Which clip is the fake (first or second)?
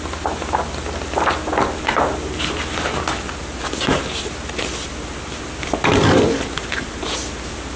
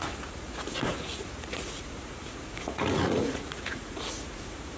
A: second